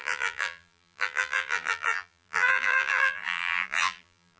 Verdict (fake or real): fake